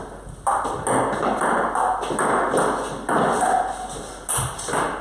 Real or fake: real